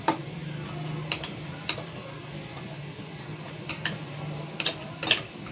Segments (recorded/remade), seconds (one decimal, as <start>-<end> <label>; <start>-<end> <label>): 0.0-5.5 recorded